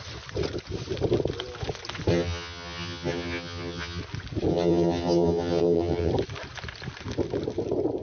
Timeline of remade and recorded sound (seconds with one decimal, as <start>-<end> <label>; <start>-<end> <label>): 0.0-2.1 recorded; 2.1-4.0 remade; 4.0-4.5 recorded; 4.5-6.1 remade; 6.1-8.0 recorded